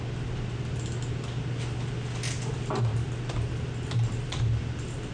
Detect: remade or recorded recorded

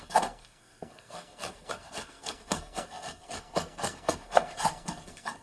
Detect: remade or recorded remade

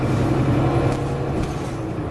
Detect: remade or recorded recorded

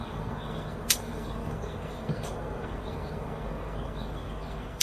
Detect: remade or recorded remade